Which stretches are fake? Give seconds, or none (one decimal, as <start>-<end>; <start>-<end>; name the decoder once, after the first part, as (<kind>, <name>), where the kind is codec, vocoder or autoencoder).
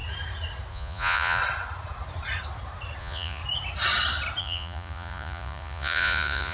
0.7-1.4 (vocoder, Vocos); 3.0-3.4; 4.4-6.5